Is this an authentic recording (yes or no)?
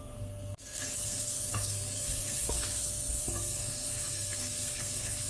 no